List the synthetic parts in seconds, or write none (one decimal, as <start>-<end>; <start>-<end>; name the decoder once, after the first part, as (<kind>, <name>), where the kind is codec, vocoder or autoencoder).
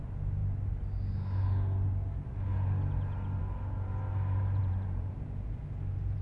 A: 4.6-5.1 (vocoder, BigVGAN v2)